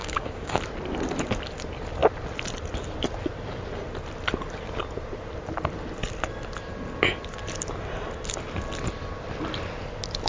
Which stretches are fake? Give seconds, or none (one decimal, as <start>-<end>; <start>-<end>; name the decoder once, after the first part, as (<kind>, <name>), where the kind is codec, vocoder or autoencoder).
0.0-0.6 (codec, DAC)